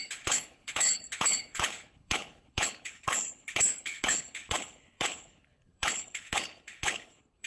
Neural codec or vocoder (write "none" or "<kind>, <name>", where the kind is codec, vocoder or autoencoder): codec, HILCodec